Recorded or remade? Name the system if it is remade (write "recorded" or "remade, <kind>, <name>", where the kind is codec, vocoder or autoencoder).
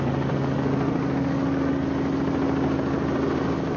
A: recorded